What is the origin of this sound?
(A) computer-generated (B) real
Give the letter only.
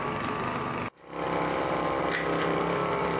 B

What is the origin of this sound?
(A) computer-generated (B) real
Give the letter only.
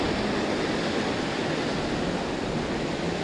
B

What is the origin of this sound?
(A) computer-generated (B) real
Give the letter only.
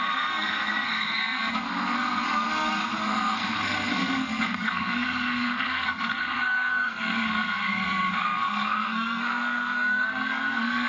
A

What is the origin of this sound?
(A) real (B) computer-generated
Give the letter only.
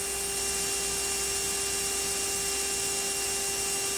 A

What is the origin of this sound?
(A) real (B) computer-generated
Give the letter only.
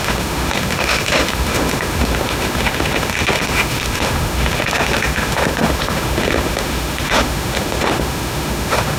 B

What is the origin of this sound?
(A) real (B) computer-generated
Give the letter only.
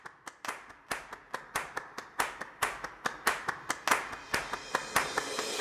A